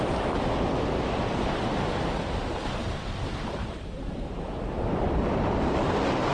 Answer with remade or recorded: recorded